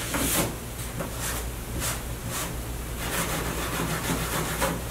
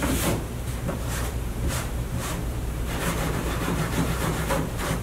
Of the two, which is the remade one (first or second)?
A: second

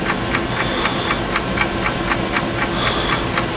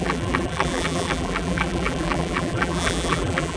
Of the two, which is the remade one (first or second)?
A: second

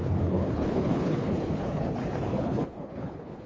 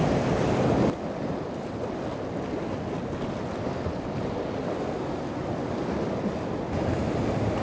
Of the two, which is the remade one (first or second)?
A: first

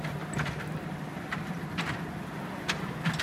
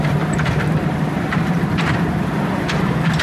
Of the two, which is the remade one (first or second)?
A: second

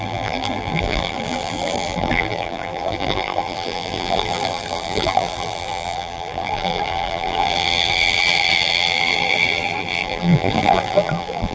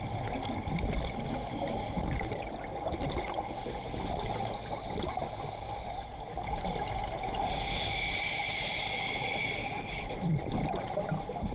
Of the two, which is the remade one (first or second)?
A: first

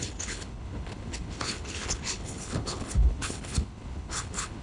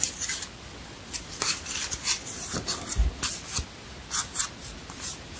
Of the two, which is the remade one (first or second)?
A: first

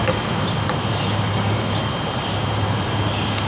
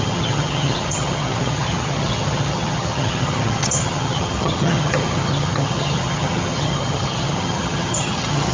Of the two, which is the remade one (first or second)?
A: second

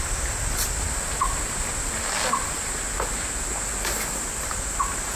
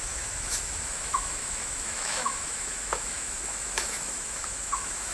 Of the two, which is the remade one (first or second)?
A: second